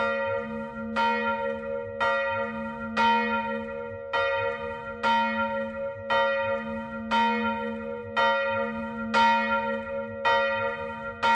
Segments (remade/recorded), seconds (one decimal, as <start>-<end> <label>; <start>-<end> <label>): 0.0-11.3 recorded